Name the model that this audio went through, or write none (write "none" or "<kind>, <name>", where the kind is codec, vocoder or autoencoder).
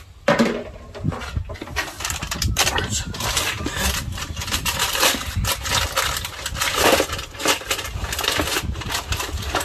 none